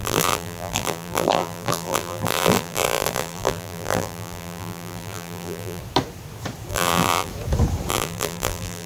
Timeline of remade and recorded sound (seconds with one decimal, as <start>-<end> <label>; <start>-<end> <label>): 0.0-5.8 remade; 5.8-6.7 recorded; 6.7-7.3 remade; 7.3-7.9 recorded; 7.9-8.9 remade